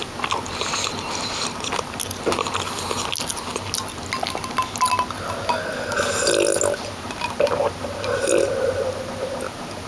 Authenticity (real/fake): real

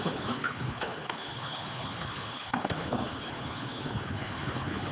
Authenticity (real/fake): fake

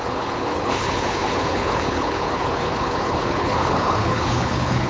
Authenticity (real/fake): fake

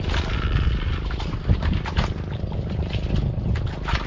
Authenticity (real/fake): real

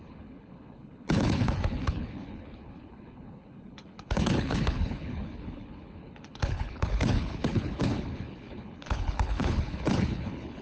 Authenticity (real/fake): fake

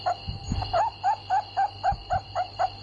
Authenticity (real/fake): real